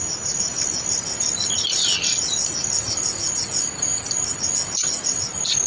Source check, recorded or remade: recorded